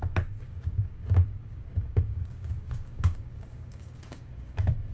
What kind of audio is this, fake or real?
fake